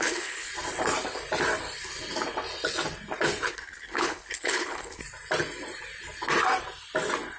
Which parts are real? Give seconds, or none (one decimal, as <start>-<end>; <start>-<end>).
0.5-3.5; 5.0-7.4